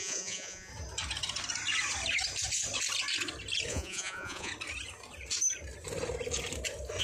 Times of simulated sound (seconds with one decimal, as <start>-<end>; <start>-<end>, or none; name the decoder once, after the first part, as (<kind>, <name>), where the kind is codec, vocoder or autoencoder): 0.0-0.7 (vocoder, Vocos); 3.7-4.5